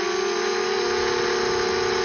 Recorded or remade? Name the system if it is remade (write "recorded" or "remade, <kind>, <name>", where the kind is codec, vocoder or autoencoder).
recorded